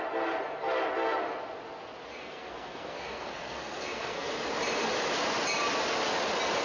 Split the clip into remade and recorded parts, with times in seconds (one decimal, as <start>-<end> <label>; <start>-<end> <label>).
0.0-2.2 recorded; 2.2-4.3 remade; 4.3-6.6 recorded